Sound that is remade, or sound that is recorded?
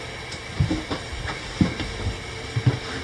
recorded